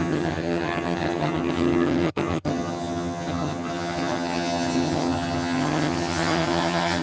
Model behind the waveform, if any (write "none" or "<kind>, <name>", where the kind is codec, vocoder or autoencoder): vocoder, HiFi-GAN